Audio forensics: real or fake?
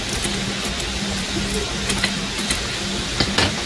real